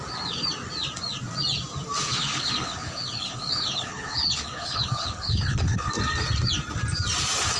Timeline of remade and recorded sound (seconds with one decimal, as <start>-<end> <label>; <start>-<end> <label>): 0.0-2.1 recorded; 2.1-5.9 remade; 5.9-7.6 recorded